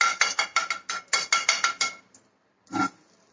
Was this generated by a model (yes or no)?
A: no